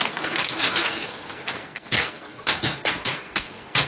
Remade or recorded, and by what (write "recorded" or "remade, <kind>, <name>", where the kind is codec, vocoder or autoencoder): remade, codec, SNAC